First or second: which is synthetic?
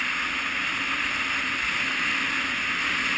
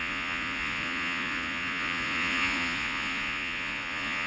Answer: second